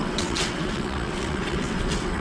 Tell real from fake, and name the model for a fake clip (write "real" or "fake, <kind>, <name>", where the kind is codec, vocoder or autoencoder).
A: fake, vocoder, WaveNeXt